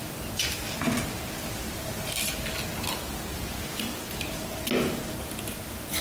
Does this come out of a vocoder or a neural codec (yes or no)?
no